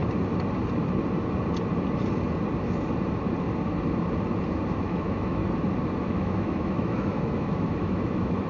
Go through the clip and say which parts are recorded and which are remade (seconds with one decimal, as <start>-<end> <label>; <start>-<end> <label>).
0.0-4.8 recorded; 4.8-5.4 remade; 5.4-6.0 recorded; 6.0-8.5 remade